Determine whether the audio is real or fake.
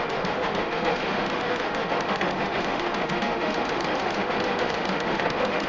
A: fake